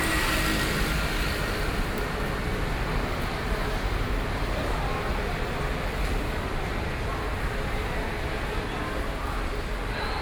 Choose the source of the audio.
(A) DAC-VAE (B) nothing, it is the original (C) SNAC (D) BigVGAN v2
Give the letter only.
B